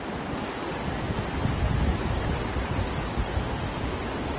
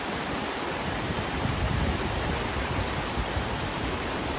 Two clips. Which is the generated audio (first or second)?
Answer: second